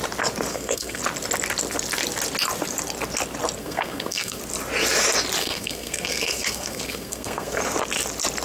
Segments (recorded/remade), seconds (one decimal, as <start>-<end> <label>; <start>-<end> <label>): 0.0-0.5 recorded; 0.5-1.0 remade; 1.0-3.6 recorded; 3.6-4.4 remade; 4.4-5.4 recorded; 5.4-7.6 remade; 7.6-8.4 recorded